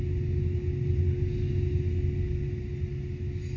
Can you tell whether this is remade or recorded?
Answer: recorded